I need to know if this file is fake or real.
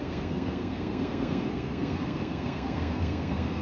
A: fake